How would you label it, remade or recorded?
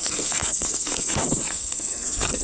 remade